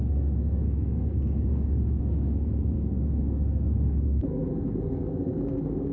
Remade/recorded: remade